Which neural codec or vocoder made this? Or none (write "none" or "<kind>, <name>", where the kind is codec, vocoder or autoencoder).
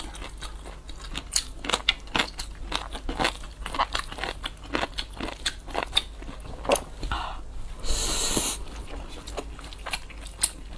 none